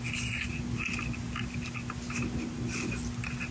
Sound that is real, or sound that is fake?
real